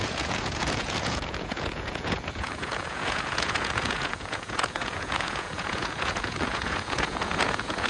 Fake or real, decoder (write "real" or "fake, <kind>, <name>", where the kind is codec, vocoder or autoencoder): fake, vocoder, Vocos